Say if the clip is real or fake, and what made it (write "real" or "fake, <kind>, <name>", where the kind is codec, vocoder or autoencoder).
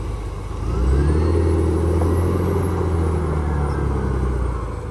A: real